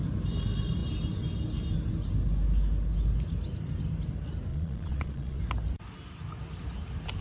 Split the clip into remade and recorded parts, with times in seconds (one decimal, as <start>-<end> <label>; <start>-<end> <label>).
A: 0.0-4.5 recorded; 4.5-5.4 remade; 5.4-7.2 recorded